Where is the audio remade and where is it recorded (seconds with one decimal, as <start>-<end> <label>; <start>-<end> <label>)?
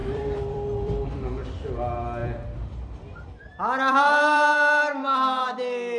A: 0.0-1.8 remade; 1.8-2.2 recorded; 2.2-6.0 remade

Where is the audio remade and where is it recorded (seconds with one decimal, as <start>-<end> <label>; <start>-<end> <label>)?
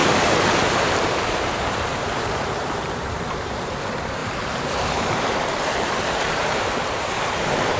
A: 0.0-7.8 remade